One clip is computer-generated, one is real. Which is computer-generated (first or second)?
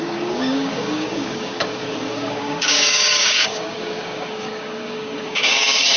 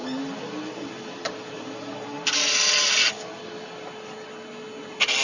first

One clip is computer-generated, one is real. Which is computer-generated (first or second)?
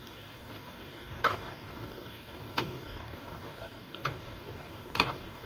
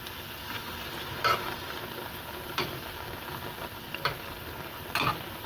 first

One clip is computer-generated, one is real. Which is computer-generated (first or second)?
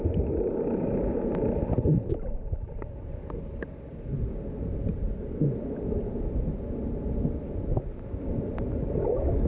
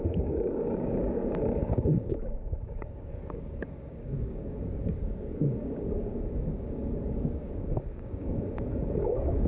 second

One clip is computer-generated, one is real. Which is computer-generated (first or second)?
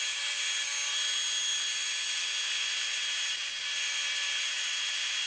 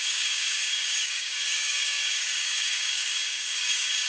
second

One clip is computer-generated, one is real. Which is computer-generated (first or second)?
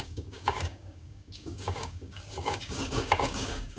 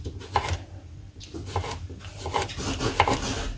first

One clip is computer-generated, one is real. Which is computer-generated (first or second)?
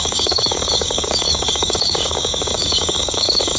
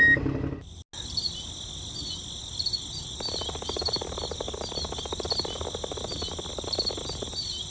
first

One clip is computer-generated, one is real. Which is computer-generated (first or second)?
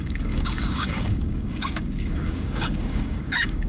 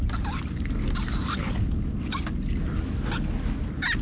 first